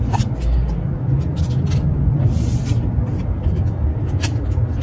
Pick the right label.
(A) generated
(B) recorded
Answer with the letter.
B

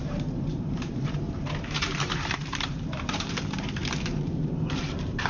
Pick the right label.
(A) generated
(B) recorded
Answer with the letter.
A